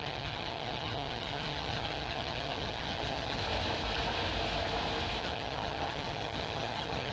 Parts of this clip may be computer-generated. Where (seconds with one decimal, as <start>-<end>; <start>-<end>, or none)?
0.0-3.4; 5.2-7.1